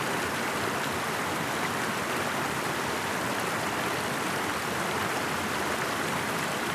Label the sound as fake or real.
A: real